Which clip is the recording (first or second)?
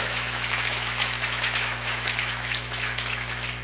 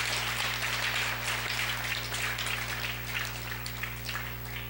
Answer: second